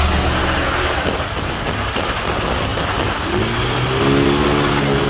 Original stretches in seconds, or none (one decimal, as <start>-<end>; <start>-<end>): 0.0-5.1